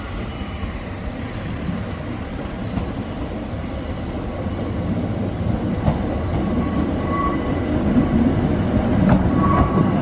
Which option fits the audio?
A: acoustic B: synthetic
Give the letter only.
A